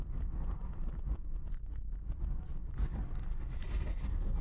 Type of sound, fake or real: real